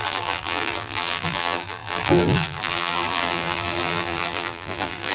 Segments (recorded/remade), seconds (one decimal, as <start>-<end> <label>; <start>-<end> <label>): 0.0-5.1 remade